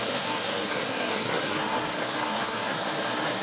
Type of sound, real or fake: fake